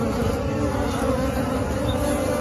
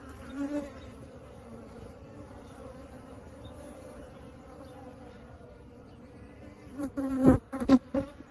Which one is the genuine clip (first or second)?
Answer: first